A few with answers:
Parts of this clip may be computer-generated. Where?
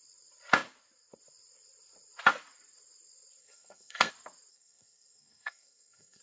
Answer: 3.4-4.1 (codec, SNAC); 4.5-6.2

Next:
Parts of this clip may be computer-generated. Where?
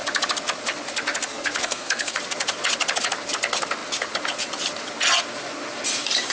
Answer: 1.3-2.2 (codec, SNAC)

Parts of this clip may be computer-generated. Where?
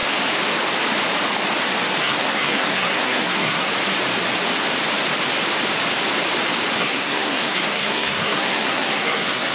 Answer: 2.0-3.7 (codec, SNAC); 6.8-9.5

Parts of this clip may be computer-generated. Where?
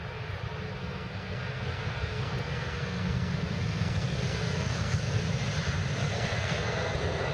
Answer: 0.8-5.2 (codec, SNAC); 6.0-7.3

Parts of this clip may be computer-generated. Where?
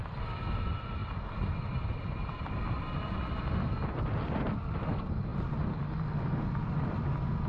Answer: none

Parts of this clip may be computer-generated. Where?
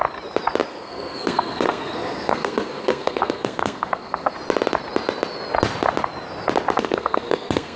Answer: 0.7-4.3 (codec, SNAC); 6.8-7.8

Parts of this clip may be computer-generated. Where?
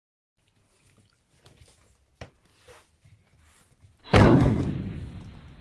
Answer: 4.0-4.6 (codec, SNAC)